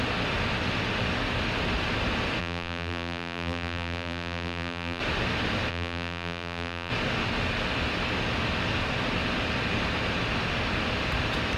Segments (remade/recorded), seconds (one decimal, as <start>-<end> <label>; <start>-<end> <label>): 0.0-2.4 recorded; 2.4-5.0 remade; 5.0-5.7 recorded; 5.7-6.9 remade; 6.9-11.6 recorded